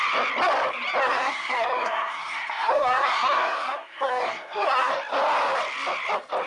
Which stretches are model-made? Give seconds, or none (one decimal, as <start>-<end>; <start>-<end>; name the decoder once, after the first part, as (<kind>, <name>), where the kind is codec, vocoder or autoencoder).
1.0-4.9 (codec, SNAC)

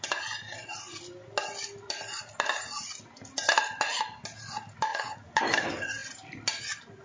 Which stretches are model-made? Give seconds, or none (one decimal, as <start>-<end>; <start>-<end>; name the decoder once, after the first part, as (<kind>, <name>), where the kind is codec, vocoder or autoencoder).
4.9-5.4 (vocoder, Vocos)

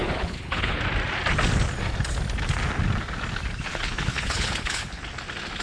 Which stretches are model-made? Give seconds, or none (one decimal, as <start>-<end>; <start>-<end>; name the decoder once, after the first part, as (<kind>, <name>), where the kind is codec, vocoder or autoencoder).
0.0-0.8 (codec, HILCodec); 3.7-5.0

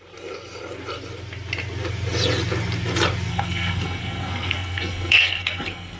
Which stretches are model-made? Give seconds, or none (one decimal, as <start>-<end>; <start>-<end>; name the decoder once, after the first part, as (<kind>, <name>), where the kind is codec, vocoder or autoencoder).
3.3-6.0 (codec, SNAC)